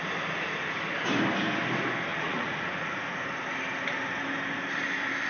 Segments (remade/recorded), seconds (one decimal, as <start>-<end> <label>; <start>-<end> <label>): 0.0-2.1 recorded; 2.1-3.3 remade; 3.3-5.3 recorded